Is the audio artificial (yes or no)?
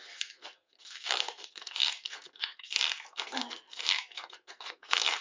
yes